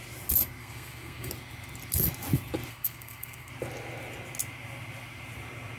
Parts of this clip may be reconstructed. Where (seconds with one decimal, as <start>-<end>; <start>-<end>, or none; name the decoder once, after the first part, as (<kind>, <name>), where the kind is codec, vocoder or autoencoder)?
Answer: 0.6-1.3 (codec, SNAC); 2.7-3.5